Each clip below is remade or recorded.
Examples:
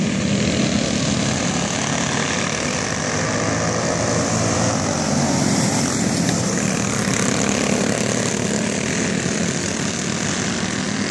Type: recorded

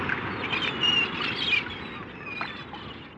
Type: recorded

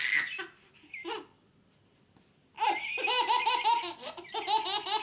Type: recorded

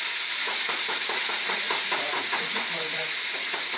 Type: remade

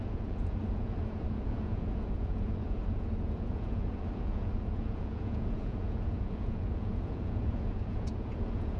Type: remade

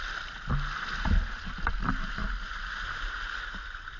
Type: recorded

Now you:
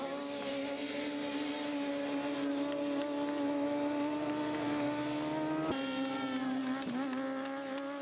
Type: recorded